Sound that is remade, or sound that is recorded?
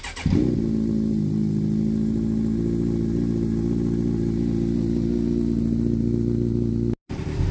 recorded